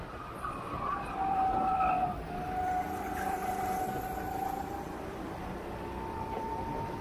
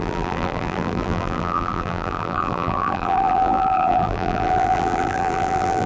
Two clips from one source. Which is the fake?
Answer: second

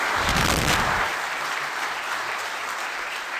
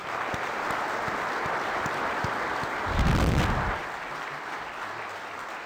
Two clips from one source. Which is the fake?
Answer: first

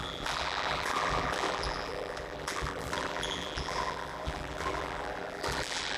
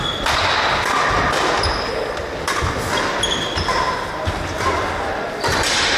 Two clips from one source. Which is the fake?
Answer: first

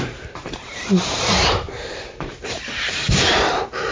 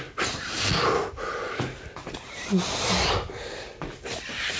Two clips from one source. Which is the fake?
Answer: first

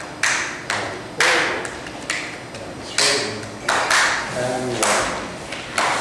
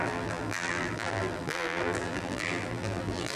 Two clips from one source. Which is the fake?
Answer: second